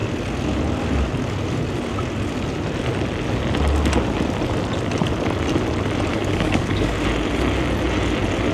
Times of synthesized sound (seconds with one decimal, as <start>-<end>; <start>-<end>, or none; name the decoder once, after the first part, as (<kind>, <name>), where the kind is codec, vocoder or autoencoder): 6.1-6.9 (codec, DAC)